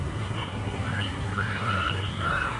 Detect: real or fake fake